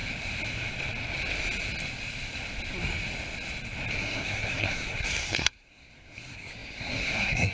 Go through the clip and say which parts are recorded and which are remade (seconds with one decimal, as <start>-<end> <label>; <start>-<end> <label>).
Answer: 0.0-3.9 recorded; 3.9-7.5 remade